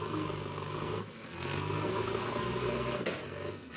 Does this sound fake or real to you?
fake